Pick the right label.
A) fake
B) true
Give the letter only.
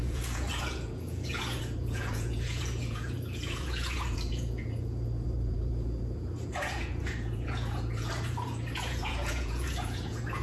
A